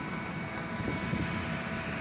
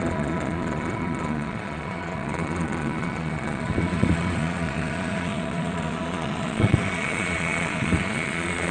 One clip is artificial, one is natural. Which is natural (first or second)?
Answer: first